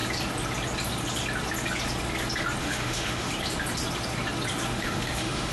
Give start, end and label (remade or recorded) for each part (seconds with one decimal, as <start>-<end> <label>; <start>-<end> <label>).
0.0-2.6 recorded; 2.6-3.3 remade; 3.3-4.7 recorded; 4.7-5.5 remade